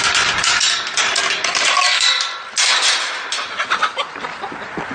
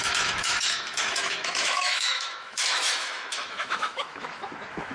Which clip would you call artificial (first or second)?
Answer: second